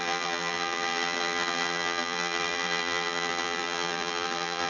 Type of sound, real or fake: fake